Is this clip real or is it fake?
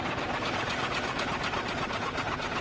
real